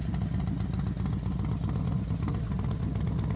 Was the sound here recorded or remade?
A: recorded